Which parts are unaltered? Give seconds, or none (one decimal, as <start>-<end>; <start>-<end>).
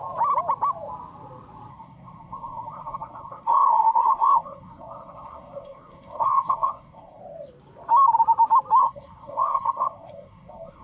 0.0-1.7; 7.2-8.8